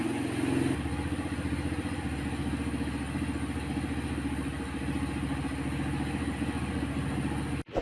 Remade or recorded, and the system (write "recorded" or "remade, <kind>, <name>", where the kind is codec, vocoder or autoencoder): recorded